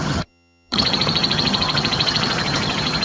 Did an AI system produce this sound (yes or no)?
yes